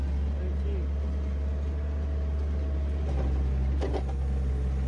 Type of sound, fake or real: real